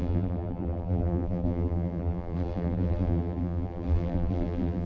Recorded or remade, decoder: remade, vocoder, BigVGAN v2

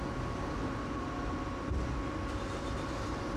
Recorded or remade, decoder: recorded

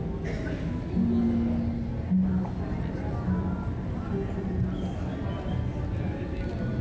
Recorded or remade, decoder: recorded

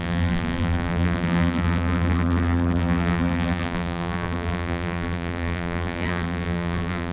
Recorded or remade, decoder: remade, vocoder, BigVGAN v2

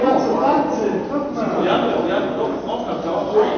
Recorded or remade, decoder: recorded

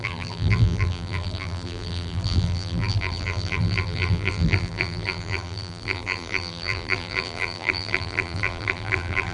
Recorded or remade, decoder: remade, vocoder, BigVGAN v2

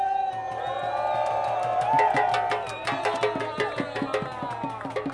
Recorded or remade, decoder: recorded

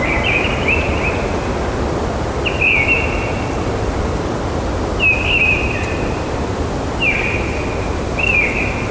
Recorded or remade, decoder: recorded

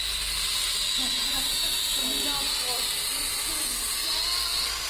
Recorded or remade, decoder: recorded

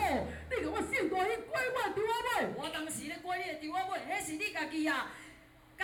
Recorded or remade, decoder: recorded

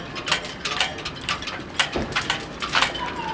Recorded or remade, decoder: remade, vocoder, BigVGAN v2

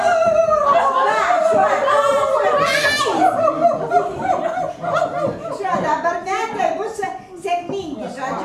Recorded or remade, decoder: recorded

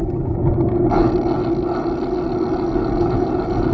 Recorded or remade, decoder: recorded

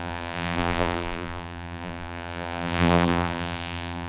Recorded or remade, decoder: remade, vocoder, BigVGAN v2